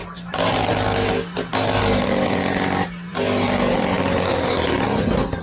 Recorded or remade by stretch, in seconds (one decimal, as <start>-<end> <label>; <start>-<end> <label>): 0.0-4.3 recorded; 4.3-5.4 remade